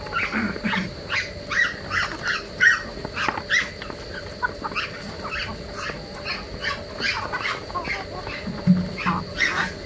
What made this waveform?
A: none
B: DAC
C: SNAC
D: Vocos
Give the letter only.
A